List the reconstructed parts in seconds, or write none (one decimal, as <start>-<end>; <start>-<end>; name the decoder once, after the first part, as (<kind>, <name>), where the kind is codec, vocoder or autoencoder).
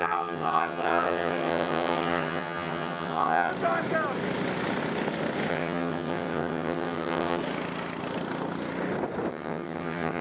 0.0-3.5 (vocoder, HiFi-GAN); 5.5-7.4; 9.3-10.2